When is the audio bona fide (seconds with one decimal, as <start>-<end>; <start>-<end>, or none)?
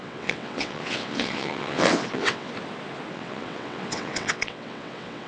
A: 2.5-3.1